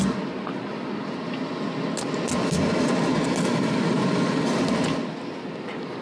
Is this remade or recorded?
recorded